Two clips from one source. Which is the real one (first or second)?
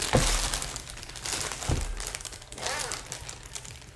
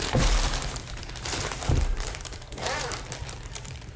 first